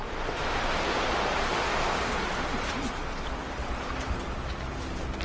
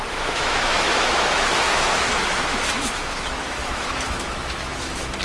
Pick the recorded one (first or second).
first